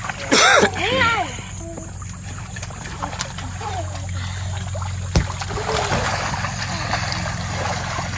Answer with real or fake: real